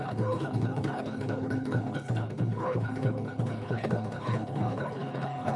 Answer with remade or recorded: remade